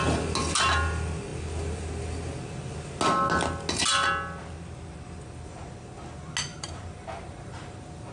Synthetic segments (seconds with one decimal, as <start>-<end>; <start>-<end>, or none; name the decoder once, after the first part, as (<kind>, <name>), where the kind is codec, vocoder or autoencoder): 6.5-8.1 (vocoder, BigVGAN v2)